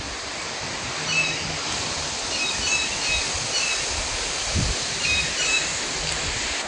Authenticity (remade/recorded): recorded